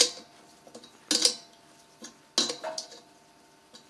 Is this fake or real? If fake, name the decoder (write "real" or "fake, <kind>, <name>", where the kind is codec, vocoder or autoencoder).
real